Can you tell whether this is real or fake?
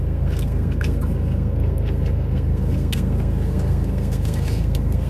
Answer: fake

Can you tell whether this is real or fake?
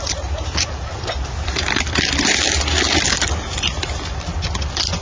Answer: real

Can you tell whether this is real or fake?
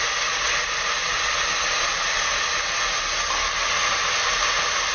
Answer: real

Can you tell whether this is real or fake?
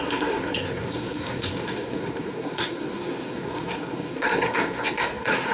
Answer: fake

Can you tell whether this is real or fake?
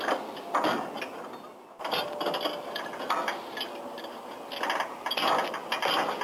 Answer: real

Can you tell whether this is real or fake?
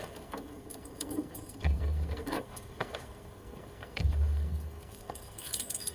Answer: fake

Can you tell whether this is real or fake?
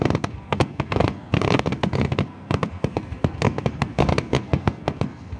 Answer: fake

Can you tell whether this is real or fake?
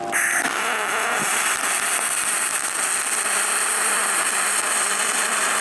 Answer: real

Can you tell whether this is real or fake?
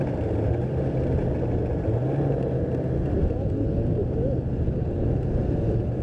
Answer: real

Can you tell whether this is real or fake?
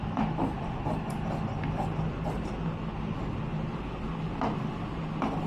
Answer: real